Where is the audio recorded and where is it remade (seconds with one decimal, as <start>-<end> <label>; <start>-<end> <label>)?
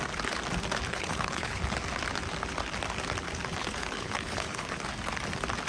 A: 0.0-0.9 recorded; 0.9-1.6 remade; 1.6-3.6 recorded; 3.6-4.7 remade; 4.7-5.7 recorded